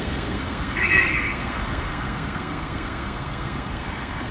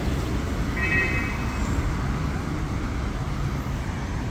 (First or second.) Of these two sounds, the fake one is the first